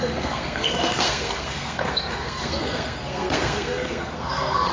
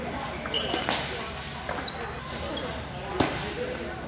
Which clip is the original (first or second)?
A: second